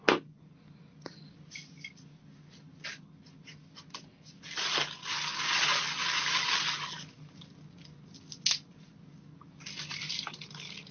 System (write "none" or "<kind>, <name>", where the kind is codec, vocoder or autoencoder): none